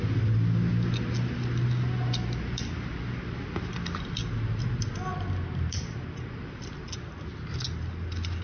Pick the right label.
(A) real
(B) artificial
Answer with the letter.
A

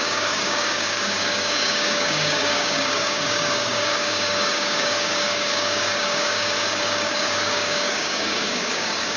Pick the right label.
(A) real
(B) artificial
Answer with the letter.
B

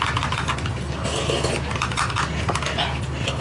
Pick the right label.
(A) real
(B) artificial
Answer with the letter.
A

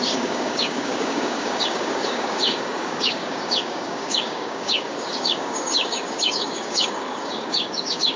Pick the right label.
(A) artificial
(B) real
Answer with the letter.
A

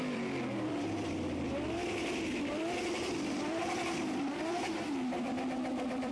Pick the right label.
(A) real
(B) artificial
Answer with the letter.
B